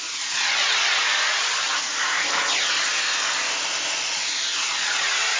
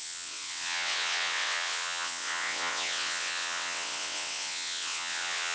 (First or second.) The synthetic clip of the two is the second